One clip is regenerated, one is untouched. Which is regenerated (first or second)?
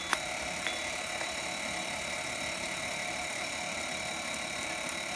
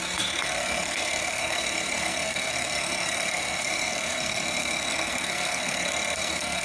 second